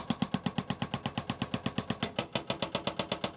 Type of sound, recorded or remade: recorded